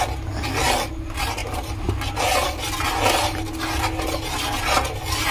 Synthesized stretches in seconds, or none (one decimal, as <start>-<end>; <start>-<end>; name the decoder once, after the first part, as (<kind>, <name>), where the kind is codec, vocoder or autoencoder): none